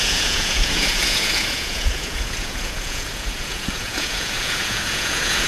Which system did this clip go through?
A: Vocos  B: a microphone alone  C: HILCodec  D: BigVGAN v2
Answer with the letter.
A